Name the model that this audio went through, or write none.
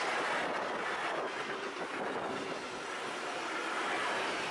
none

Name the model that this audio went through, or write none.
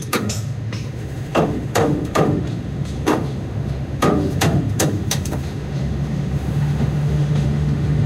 autoencoder, DAC-VAE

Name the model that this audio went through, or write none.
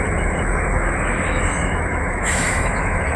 autoencoder, DAC-VAE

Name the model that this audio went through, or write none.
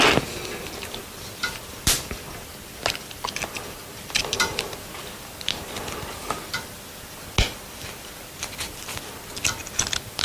none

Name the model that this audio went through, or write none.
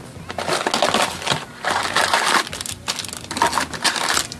none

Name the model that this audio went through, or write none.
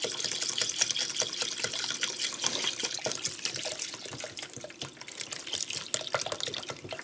none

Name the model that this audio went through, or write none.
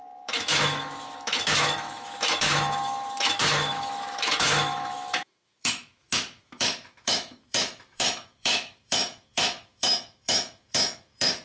autoencoder, DAC-VAE